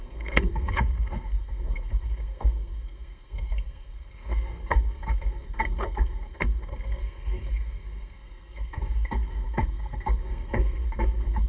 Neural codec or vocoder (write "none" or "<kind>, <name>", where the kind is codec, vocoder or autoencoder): codec, SNAC